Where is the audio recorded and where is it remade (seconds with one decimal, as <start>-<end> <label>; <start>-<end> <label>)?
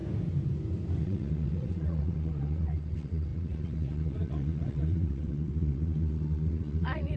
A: 0.0-1.0 recorded; 1.0-7.2 remade